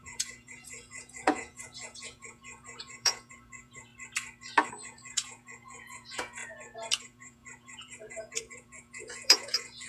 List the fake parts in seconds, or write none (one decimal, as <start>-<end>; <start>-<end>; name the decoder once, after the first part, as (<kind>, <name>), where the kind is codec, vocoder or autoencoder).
0.0-3.9 (vocoder, Vocos); 4.7-6.4; 7.0-9.9

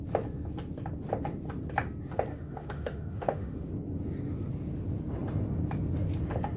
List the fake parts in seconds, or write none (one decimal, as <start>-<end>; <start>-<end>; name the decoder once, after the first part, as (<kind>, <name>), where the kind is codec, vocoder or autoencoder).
2.3-3.7 (autoencoder, DAC-VAE)